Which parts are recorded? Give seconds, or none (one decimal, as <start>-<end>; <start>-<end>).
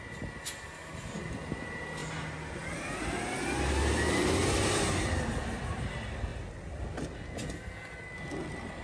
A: 0.0-8.8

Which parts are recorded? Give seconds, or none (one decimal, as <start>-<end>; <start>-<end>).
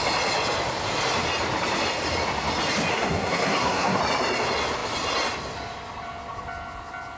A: 0.0-2.9; 4.0-7.2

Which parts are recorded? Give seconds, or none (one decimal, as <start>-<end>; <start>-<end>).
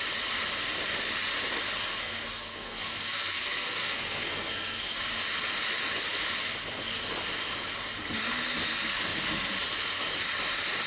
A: 0.0-1.9; 5.0-10.9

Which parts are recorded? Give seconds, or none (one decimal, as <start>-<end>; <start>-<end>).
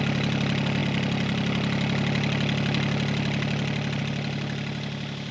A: 0.0-5.3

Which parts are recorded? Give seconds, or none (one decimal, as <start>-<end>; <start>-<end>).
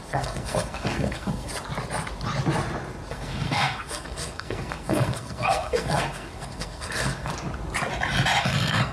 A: 1.5-3.1; 7.3-8.4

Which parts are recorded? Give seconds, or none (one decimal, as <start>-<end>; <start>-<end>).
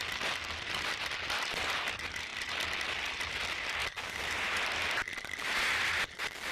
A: 0.0-6.5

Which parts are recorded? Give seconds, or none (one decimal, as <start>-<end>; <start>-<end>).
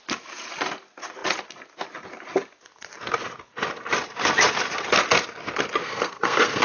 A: 0.0-5.8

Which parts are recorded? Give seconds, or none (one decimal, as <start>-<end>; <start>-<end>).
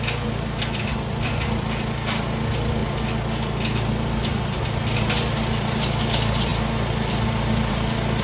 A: 0.0-8.2